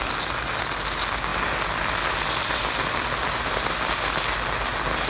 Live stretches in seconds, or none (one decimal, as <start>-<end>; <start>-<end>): 0.0-5.1